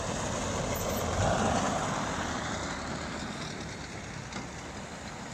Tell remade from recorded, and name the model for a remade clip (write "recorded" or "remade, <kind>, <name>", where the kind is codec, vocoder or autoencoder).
recorded